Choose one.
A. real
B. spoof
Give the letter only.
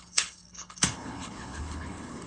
B